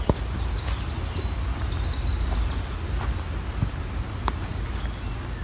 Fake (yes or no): no